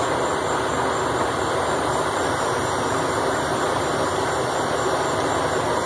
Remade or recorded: recorded